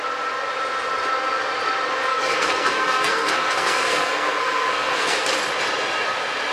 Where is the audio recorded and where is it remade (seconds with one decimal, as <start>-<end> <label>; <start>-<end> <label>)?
0.0-2.1 recorded; 2.1-5.3 remade; 5.3-6.5 recorded